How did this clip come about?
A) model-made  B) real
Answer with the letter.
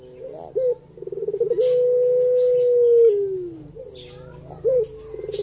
B